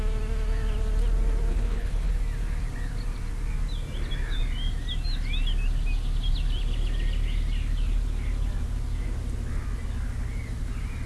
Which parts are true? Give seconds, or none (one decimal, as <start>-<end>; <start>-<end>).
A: 0.0-1.5; 2.1-11.1